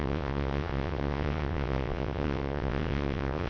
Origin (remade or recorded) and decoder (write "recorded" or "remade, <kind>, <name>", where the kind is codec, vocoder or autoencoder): remade, vocoder, WaveNeXt